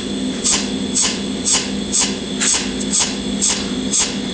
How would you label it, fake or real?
real